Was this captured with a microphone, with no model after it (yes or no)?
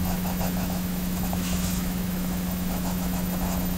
no